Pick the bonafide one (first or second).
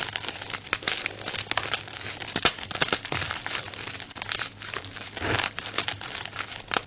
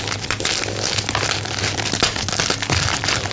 second